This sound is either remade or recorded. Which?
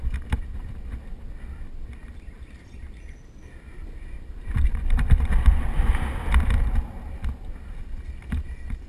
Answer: recorded